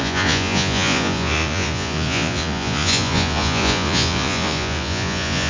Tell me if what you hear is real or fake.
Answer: fake